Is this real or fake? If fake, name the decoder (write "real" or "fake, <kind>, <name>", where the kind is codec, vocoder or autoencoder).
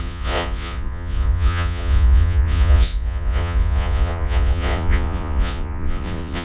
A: fake, vocoder, Vocos